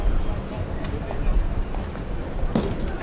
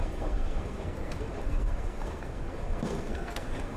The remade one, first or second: second